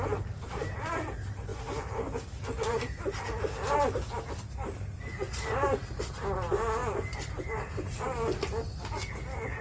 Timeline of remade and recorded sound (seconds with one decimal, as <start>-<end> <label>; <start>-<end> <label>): 0.0-9.6 recorded